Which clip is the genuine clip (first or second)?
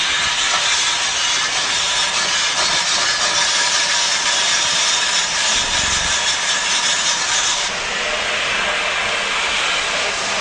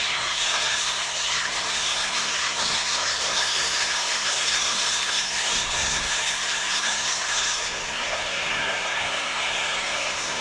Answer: first